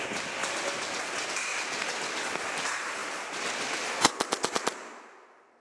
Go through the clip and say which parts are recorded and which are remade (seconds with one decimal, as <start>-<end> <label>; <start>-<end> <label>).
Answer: 0.0-5.6 recorded